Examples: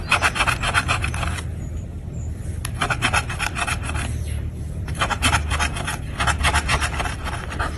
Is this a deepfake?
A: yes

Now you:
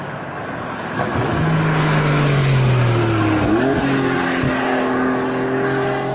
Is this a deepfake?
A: yes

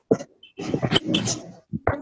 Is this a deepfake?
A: no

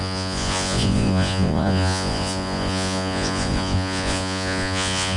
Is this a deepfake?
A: yes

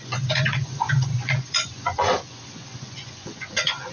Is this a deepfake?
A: yes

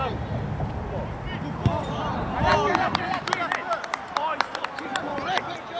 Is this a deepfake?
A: no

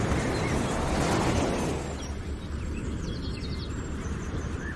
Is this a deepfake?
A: no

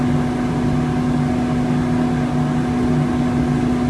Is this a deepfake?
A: no